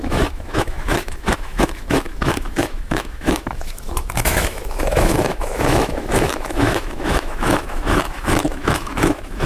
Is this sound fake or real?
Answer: fake